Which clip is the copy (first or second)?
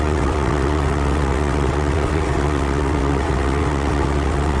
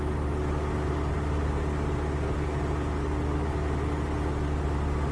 first